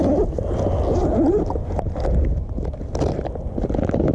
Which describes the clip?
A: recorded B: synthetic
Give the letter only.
A